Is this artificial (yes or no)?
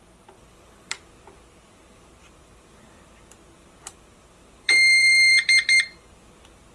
yes